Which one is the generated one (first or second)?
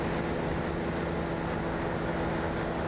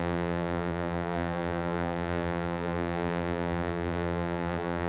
second